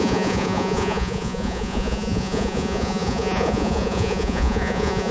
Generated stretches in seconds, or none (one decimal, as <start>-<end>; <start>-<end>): 0.0-5.1